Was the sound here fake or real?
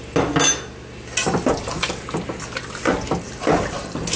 real